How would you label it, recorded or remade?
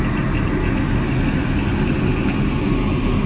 recorded